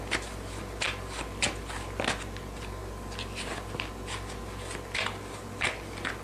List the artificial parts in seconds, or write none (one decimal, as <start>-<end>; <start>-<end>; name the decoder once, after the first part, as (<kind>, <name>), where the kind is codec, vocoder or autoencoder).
none